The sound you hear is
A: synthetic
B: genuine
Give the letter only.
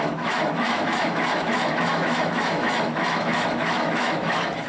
A